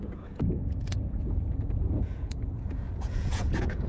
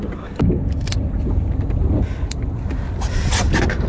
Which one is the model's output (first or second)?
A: first